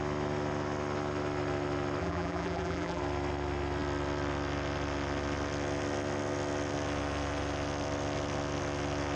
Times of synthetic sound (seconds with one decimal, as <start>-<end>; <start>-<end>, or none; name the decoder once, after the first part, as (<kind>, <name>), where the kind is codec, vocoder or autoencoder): 2.0-3.0 (vocoder, BigVGAN v2)